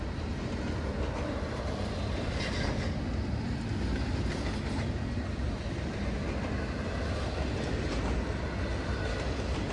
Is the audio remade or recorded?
recorded